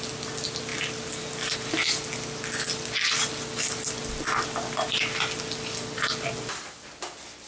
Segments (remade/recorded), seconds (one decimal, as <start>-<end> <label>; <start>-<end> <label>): 0.0-7.5 recorded